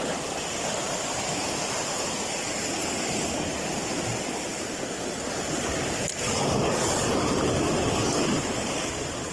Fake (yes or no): no